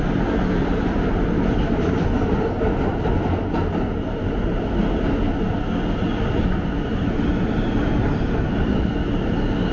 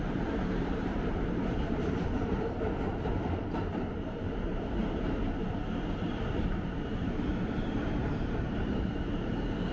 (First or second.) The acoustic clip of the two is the first